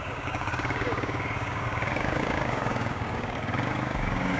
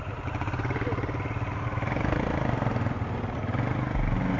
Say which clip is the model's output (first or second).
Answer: first